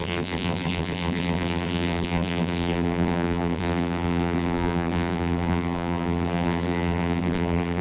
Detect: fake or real fake